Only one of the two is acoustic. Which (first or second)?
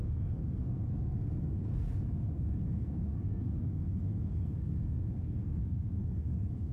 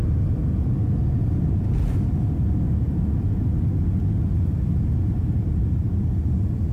second